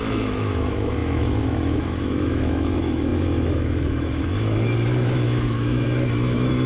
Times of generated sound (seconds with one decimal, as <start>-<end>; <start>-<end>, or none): 0.0-6.7